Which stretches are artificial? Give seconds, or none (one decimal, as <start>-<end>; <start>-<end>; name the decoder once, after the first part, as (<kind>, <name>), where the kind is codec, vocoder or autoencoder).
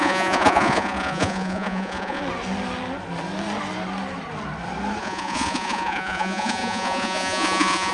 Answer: 0.0-2.2 (vocoder, Vocos); 5.0-7.9